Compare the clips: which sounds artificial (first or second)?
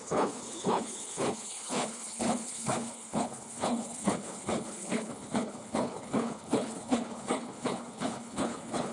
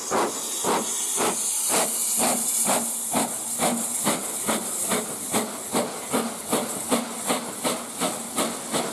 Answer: first